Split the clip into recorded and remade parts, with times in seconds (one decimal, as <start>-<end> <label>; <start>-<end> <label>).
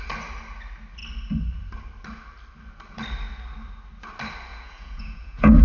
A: 0.0-4.5 recorded; 4.5-5.6 remade